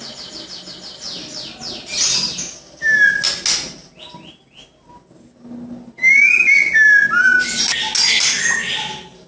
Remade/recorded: recorded